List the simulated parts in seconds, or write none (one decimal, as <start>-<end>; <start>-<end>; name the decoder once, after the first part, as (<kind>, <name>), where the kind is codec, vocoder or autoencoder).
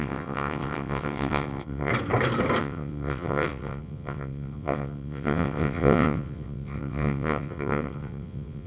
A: 0.0-1.9 (vocoder, WaveNeXt); 2.6-8.7